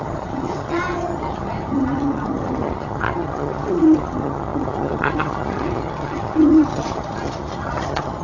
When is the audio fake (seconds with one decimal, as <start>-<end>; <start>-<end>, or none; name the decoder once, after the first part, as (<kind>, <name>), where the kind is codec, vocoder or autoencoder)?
0.0-8.2 (vocoder, HiFi-GAN)